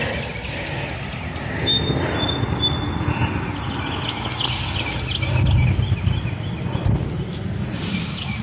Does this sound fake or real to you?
real